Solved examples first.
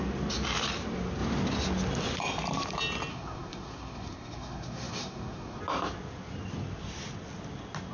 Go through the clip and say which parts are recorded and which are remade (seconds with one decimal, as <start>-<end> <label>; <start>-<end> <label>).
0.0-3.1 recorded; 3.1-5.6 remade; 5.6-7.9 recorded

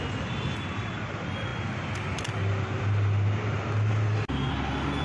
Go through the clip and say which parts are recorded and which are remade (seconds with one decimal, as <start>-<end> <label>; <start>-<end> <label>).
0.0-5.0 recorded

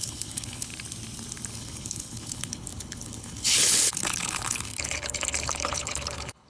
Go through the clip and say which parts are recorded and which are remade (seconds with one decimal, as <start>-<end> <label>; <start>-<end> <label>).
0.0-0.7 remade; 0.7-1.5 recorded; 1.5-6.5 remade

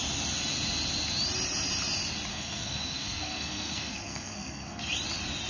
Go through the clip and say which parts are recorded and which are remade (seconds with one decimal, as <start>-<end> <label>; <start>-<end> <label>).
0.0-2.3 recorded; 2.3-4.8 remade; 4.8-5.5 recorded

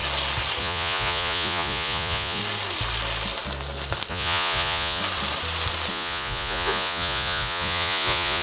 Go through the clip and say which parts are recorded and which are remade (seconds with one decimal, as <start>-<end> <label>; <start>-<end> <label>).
0.0-0.6 recorded; 0.6-2.4 remade; 2.4-4.1 recorded; 4.1-5.0 remade; 5.0-5.9 recorded; 5.9-8.4 remade

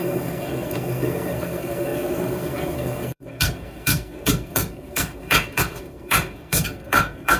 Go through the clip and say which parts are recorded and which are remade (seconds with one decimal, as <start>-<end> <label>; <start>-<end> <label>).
0.0-7.4 remade

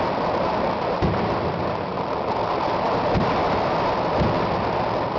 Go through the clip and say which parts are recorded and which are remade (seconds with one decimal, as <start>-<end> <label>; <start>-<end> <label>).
0.0-5.2 recorded